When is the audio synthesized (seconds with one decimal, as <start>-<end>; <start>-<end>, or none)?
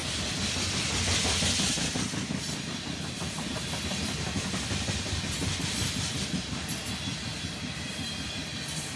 none